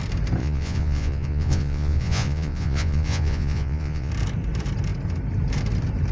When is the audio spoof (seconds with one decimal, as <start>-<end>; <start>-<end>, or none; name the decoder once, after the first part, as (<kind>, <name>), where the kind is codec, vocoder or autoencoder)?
0.4-4.1 (vocoder, Vocos)